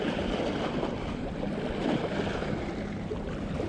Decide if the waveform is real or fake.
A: real